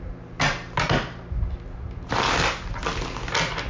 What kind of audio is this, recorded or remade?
recorded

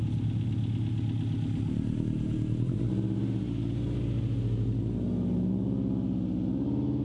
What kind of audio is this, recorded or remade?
recorded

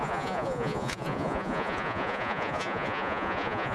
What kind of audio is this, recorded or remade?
remade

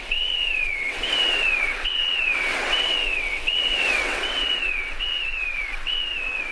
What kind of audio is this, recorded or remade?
remade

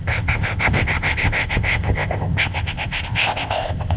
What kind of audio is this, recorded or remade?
remade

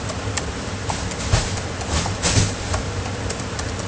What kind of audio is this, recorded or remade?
remade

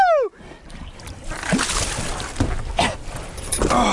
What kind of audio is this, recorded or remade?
recorded